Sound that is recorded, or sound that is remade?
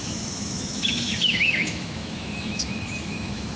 remade